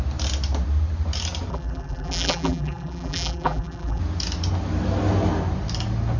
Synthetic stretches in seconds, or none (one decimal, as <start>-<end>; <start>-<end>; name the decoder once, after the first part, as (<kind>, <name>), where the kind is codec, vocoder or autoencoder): 1.5-4.0 (vocoder, BigVGAN v2)